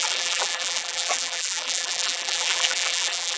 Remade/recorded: remade